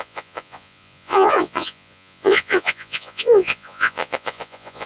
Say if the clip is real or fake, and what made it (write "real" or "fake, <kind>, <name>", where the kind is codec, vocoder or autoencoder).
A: fake, vocoder, Vocos